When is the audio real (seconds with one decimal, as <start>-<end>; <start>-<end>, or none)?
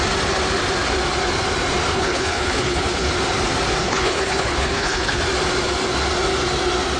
0.0-1.9; 3.1-3.8; 5.2-7.0